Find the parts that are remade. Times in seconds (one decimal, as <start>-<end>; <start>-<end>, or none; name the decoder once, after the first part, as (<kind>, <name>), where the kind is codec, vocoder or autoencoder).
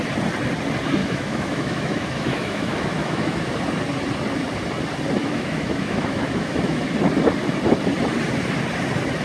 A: 1.0-3.4 (autoencoder, DAC-VAE); 5.2-6.8